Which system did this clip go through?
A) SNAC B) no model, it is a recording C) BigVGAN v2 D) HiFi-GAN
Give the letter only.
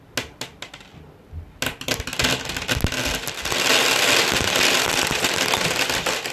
B